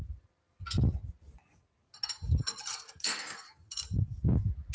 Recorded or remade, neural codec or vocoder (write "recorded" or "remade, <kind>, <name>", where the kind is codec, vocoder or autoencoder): recorded